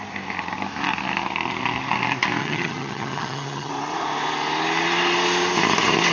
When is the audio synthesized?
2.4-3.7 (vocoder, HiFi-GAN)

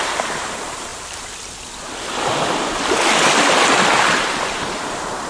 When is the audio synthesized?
0.0-0.9 (vocoder, BigVGAN v2); 4.1-5.3

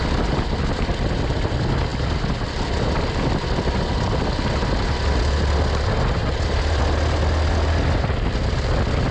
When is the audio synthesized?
6.2-6.8 (vocoder, BigVGAN v2)

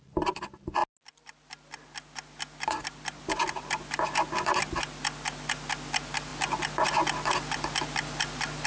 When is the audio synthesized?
none

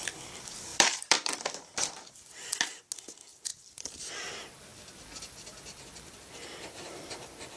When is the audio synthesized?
0.7-2.1 (vocoder, BigVGAN v2); 3.5-4.1; 4.7-7.6

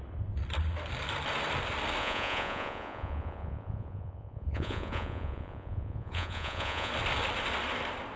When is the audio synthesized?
2.0-6.9 (vocoder, Vocos)

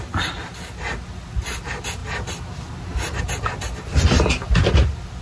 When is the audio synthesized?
none